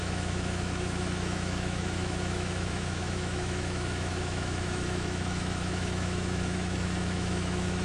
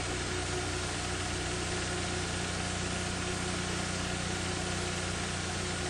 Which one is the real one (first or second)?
second